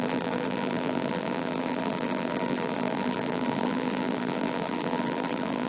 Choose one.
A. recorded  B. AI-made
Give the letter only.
B